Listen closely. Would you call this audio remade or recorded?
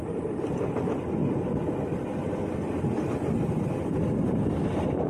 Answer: recorded